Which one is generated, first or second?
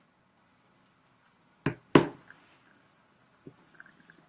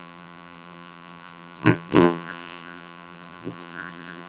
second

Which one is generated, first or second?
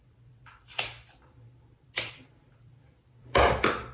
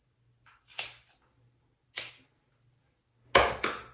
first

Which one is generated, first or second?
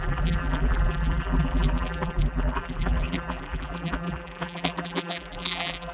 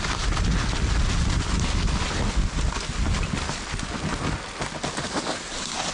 first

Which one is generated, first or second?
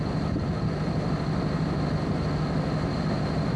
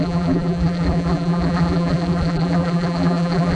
second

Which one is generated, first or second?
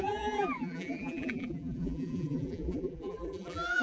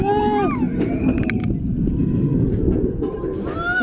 first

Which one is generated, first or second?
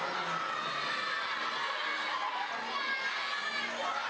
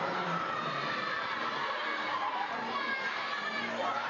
second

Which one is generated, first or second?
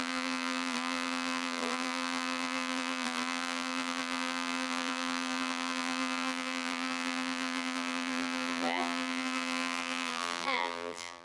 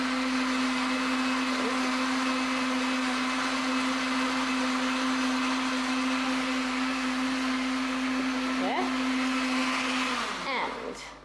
first